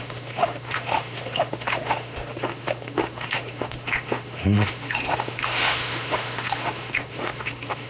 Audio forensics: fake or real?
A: fake